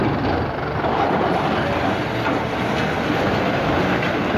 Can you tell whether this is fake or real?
real